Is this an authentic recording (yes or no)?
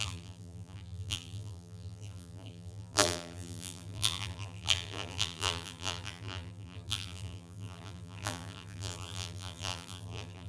no